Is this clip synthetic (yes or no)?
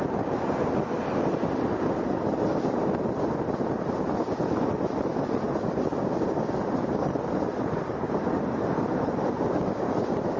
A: no